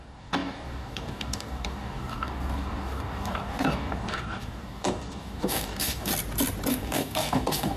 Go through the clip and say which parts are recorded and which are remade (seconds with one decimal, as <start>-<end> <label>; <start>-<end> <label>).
0.0-6.1 remade; 6.1-6.7 recorded; 6.7-7.8 remade